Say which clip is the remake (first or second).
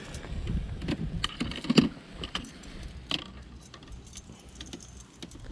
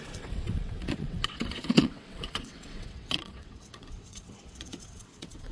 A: second